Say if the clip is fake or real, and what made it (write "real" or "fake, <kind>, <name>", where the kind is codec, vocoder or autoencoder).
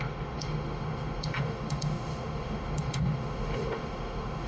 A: fake, autoencoder, DAC-VAE